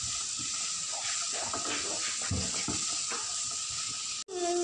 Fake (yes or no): no